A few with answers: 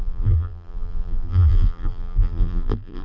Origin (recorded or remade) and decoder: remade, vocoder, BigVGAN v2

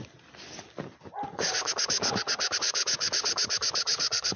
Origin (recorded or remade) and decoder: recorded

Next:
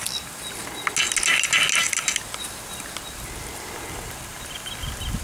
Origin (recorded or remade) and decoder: recorded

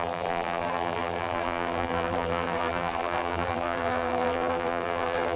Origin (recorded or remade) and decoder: remade, vocoder, BigVGAN v2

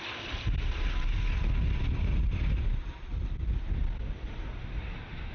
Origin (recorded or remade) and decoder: recorded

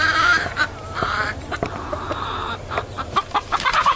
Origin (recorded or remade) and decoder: remade, vocoder, BigVGAN v2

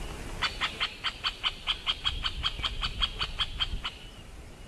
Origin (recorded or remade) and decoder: remade, vocoder, BigVGAN v2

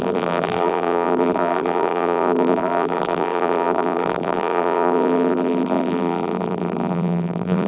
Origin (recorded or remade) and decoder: remade, vocoder, BigVGAN v2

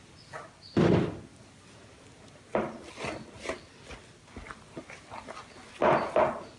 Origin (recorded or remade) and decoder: recorded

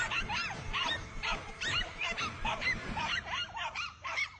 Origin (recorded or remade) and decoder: remade, vocoder, BigVGAN v2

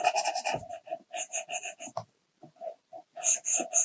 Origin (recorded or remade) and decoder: recorded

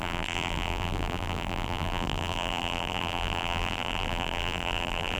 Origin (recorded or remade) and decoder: remade, vocoder, BigVGAN v2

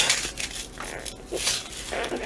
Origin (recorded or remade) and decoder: recorded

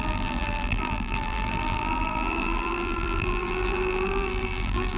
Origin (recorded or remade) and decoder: remade, vocoder, BigVGAN v2